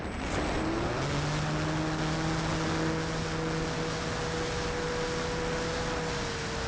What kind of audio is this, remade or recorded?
recorded